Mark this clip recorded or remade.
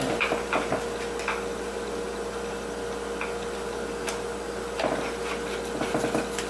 recorded